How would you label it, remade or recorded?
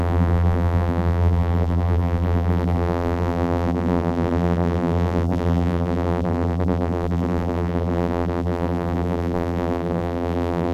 remade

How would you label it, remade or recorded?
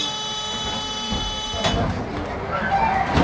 recorded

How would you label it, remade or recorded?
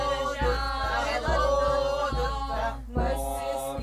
recorded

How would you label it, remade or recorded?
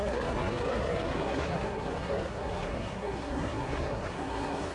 remade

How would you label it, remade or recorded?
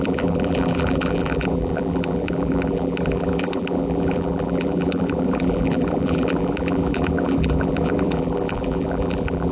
remade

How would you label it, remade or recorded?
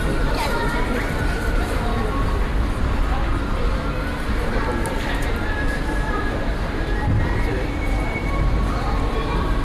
remade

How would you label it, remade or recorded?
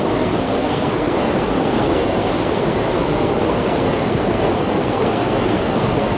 remade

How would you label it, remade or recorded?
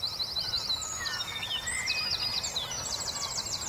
recorded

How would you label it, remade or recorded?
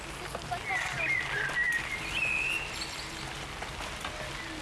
recorded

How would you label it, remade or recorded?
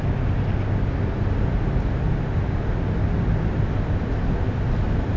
recorded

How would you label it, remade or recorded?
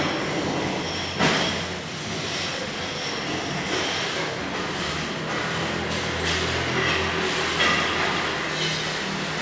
recorded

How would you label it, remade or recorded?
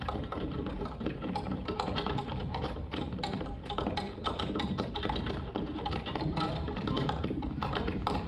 remade